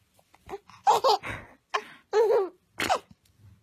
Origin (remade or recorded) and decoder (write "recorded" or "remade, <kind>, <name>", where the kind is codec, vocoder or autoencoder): recorded